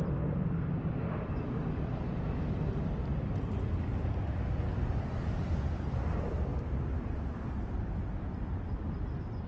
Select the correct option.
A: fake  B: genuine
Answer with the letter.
B